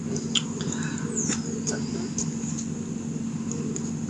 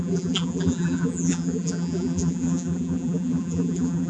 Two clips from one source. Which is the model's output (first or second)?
second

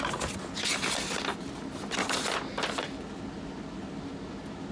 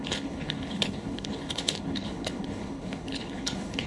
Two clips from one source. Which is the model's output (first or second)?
second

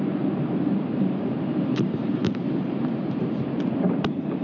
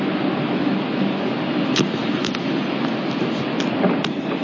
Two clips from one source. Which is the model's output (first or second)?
first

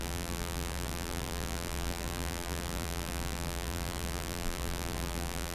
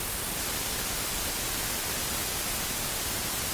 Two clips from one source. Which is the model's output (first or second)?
first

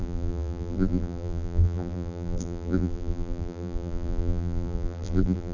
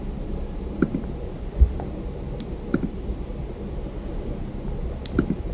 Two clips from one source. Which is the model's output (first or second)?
first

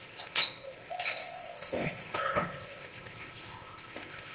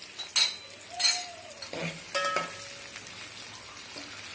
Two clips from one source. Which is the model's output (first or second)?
first